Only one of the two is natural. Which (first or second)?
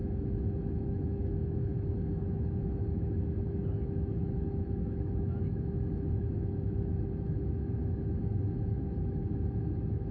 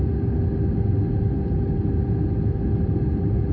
second